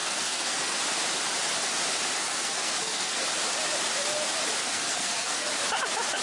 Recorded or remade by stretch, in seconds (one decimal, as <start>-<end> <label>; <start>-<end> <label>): 0.0-0.8 remade; 0.8-2.2 recorded; 2.2-3.2 remade; 3.2-4.6 recorded; 4.6-5.5 remade; 5.5-6.2 recorded